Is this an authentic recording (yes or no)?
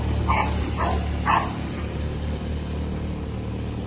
yes